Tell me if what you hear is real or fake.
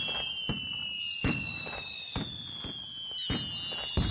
real